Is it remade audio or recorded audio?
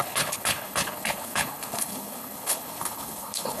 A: remade